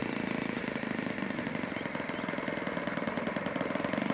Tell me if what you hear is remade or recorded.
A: recorded